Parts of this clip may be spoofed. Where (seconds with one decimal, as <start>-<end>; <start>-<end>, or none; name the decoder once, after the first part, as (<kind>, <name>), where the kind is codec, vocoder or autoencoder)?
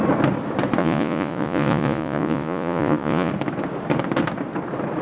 0.8-3.3 (vocoder, Vocos)